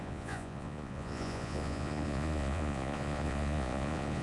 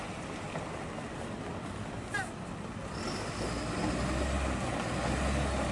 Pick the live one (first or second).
second